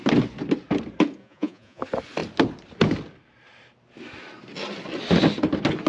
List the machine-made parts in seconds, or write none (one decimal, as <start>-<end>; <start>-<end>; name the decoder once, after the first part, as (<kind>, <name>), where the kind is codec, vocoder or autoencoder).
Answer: 1.2-1.8 (vocoder, Vocos)